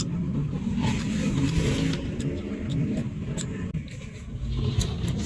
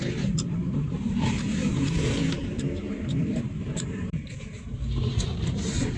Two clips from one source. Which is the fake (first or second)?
second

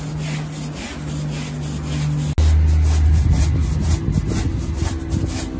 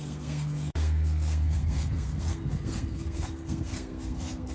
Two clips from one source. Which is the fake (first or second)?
second